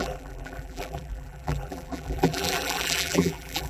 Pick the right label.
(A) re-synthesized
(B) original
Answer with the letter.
A